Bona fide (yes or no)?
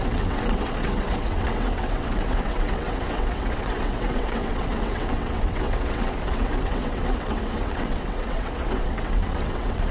no